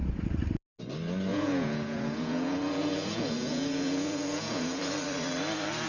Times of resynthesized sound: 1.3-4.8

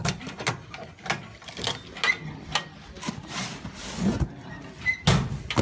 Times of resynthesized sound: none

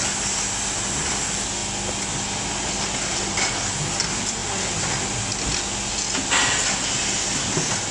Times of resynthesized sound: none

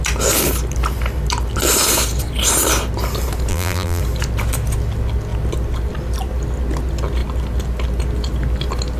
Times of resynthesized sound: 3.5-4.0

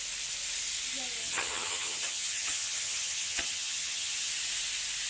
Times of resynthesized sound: 1.2-4.3

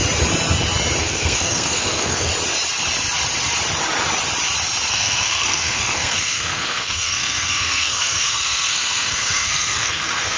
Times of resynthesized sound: 1.0-2.3; 4.9-10.4